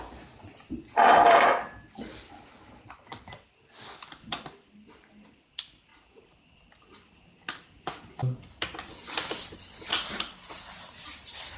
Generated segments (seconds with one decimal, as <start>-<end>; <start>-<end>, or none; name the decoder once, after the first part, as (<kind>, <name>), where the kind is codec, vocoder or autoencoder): none